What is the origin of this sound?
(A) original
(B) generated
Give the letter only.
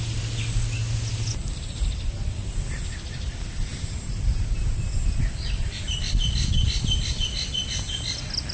A